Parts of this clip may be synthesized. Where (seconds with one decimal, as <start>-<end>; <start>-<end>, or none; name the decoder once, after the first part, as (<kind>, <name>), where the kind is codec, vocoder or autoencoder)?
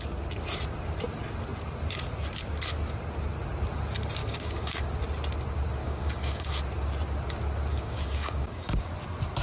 4.2-4.8 (codec, DAC); 5.8-6.6; 7.7-8.8